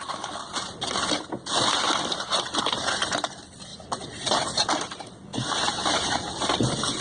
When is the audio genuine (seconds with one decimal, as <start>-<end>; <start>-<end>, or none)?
0.0-3.7; 4.7-5.3; 6.1-7.0